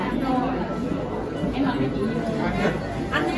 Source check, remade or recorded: recorded